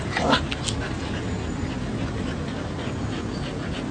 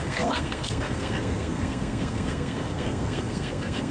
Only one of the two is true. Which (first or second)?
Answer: first